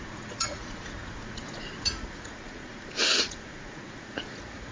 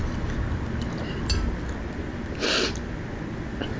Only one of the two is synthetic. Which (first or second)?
first